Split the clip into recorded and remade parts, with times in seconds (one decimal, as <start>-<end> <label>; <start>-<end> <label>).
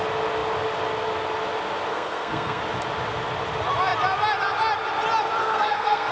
0.0-1.9 recorded; 1.9-2.6 remade; 2.6-5.4 recorded; 5.4-6.1 remade